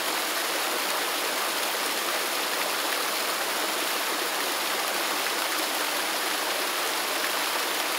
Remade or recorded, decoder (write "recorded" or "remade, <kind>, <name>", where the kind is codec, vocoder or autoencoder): recorded